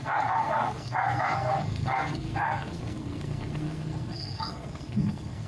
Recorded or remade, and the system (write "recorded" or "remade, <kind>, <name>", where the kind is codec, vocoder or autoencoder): remade, codec, SNAC